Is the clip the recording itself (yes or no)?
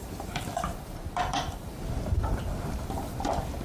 no